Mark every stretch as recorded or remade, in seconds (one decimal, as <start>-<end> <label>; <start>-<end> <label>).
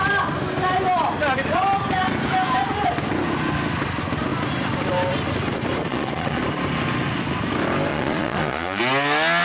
0.0-5.9 recorded; 5.9-6.4 remade; 6.4-7.9 recorded; 7.9-8.8 remade; 8.8-9.4 recorded